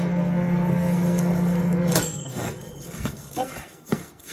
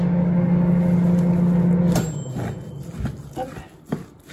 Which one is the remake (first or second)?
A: first